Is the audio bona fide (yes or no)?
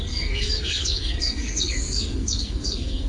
no